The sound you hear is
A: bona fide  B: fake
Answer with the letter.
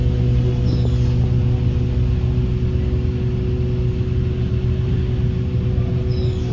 A